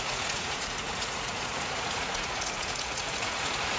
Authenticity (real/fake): fake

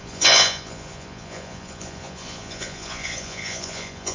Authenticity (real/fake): fake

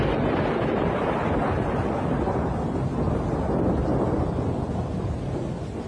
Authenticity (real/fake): real